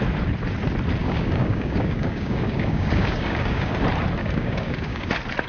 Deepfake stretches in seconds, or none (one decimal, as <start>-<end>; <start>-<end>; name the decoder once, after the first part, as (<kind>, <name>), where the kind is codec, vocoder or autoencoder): 1.0-3.7 (codec, DAC); 4.2-5.1